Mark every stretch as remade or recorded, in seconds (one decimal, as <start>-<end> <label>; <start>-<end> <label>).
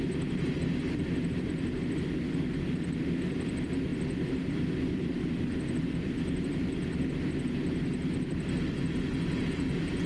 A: 0.0-10.1 recorded